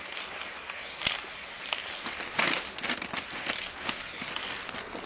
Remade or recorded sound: recorded